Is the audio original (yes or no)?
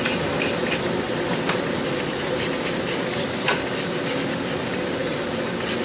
yes